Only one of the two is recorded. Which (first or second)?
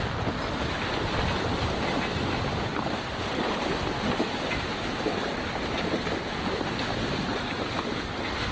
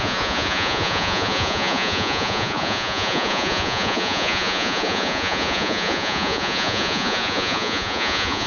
first